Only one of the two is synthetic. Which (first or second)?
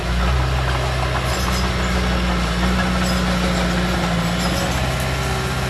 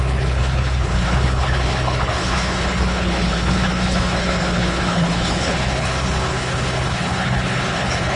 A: second